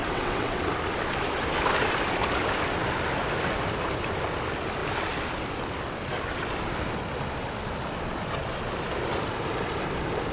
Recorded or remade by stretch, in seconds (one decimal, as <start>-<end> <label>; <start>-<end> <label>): 0.0-0.7 remade; 0.7-10.3 recorded